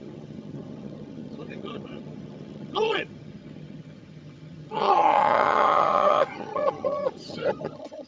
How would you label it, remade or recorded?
remade